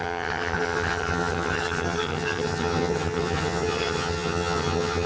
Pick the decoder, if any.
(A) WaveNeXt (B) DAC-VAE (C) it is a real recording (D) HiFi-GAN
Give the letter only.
D